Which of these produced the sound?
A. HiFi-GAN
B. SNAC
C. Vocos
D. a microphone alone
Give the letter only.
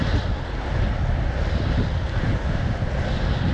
D